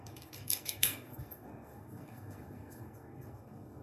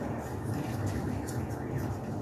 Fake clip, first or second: first